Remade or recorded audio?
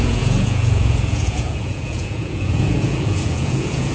remade